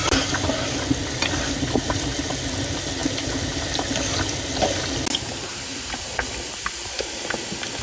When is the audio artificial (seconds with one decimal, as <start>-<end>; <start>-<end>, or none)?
1.0-2.3; 5.7-7.2